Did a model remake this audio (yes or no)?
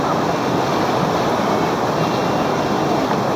no